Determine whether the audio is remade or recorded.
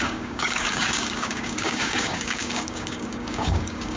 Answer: remade